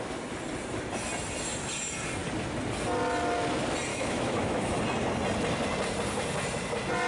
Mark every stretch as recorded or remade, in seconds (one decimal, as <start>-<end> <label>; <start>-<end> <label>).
0.0-3.9 recorded; 3.9-4.8 remade; 4.8-7.1 recorded